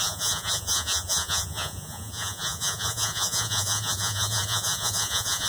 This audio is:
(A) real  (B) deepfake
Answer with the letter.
B